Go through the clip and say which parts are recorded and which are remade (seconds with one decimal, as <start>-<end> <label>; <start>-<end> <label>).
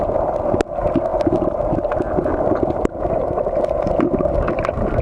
0.0-5.0 recorded